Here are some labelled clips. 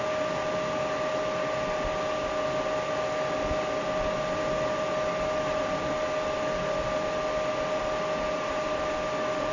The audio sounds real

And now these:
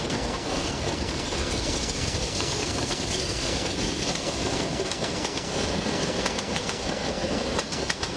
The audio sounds fake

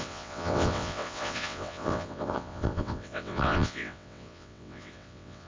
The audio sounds fake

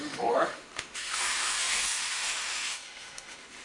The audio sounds fake